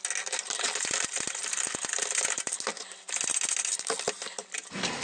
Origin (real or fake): real